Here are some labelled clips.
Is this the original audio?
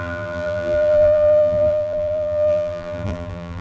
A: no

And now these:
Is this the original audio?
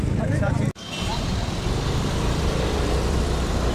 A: no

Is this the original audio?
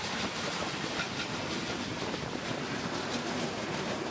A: yes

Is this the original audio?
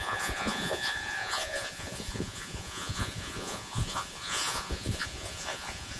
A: no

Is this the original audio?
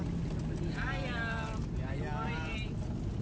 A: yes